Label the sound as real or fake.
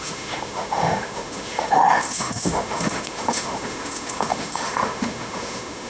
fake